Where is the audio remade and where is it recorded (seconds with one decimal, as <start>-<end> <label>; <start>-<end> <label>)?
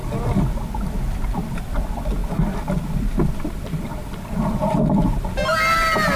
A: 0.0-6.2 recorded